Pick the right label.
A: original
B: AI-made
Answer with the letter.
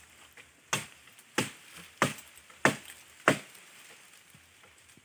A